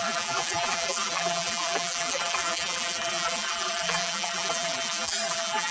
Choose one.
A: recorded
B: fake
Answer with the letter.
B